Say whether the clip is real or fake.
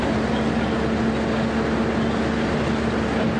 real